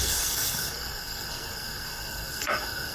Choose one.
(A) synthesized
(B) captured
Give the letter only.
A